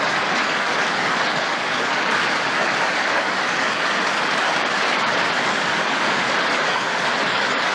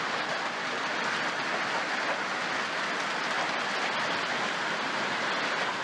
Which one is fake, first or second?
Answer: first